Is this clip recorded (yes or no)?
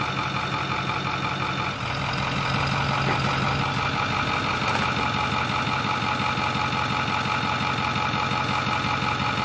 yes